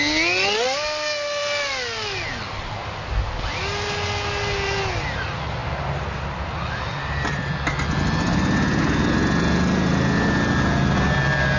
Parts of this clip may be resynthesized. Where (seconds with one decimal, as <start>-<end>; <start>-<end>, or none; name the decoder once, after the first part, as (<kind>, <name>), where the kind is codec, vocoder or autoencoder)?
none